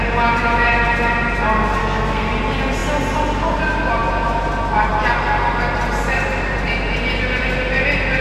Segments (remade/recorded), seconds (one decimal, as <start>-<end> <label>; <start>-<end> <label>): 0.0-1.8 recorded; 1.8-2.3 remade; 2.3-8.2 recorded